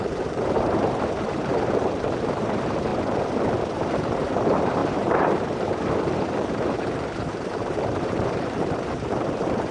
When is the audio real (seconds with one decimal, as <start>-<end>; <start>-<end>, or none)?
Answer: 2.9-3.7